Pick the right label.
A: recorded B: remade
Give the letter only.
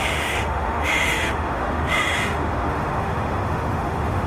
B